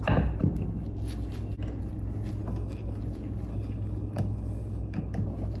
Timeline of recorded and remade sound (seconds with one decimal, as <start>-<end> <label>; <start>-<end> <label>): 0.0-2.4 recorded; 2.4-3.0 remade; 3.0-3.5 recorded; 3.5-5.1 remade; 5.1-5.6 recorded